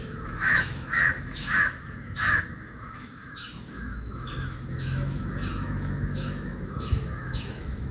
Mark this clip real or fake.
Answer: fake